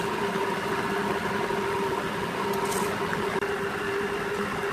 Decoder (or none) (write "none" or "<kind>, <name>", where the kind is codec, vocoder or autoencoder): none